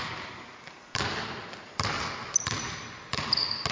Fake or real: real